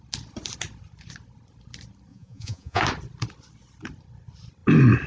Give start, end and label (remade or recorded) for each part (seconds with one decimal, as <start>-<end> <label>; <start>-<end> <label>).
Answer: 0.0-2.1 recorded; 2.1-2.8 remade; 2.8-5.1 recorded